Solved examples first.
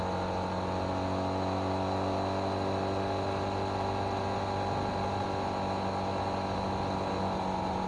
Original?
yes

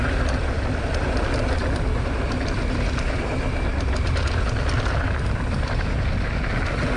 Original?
yes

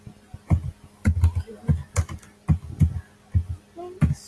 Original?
yes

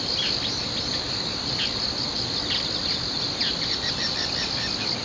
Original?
yes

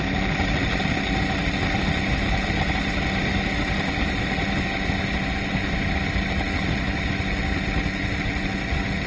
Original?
yes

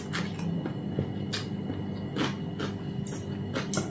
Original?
yes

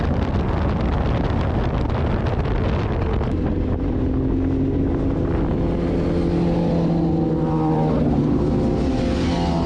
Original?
yes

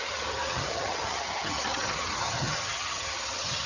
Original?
no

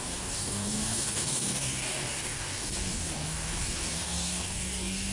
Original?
no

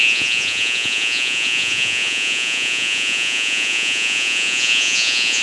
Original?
no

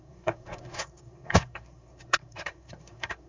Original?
no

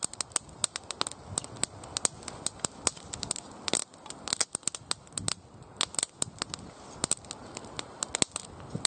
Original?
yes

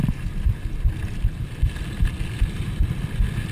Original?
yes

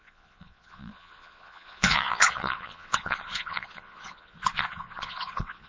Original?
no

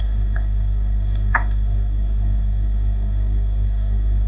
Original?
no